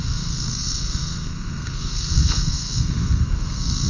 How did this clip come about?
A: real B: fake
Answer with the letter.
B